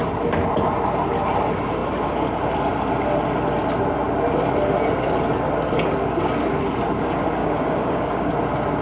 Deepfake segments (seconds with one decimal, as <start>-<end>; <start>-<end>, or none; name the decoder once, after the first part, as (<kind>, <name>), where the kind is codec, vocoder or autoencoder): 7.4-8.3 (codec, DAC)